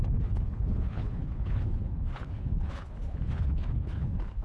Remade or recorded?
remade